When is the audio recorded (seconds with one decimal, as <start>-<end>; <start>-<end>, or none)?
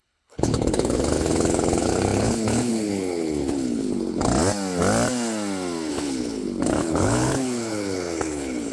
4.3-5.9